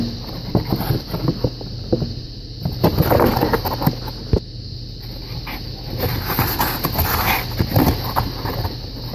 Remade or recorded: recorded